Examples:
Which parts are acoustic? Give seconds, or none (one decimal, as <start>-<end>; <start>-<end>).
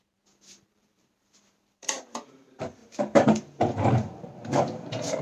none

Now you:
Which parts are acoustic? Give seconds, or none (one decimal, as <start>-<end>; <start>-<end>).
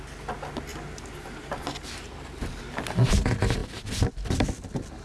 0.0-0.7; 2.8-5.0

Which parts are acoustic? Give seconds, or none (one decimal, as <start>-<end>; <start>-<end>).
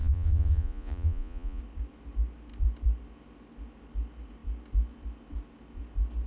1.6-6.3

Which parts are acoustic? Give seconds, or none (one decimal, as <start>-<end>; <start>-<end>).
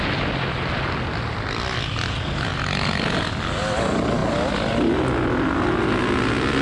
0.0-6.6